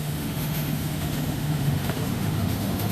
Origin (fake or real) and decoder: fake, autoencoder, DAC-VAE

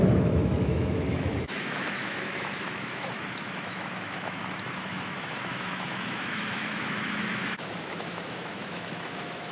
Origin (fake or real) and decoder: fake, autoencoder, DAC-VAE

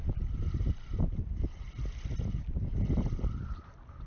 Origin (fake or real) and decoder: real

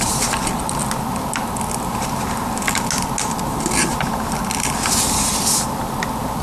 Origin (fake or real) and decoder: real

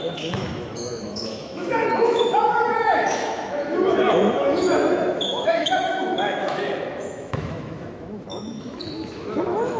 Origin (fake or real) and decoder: fake, autoencoder, DAC-VAE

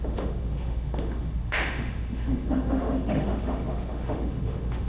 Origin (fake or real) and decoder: fake, autoencoder, DAC-VAE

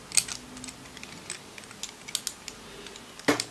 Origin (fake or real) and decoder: real